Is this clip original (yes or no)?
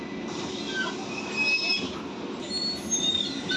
yes